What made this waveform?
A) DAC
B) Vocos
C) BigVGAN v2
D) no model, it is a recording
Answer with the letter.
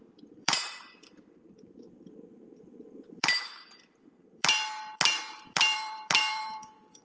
C